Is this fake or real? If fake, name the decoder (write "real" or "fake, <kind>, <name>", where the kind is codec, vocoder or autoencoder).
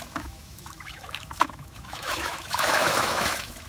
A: fake, autoencoder, DAC-VAE